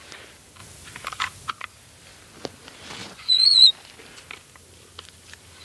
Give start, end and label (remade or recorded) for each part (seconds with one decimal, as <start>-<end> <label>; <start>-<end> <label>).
0.0-3.0 recorded; 3.0-3.7 remade; 3.7-5.6 recorded